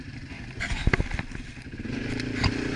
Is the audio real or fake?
real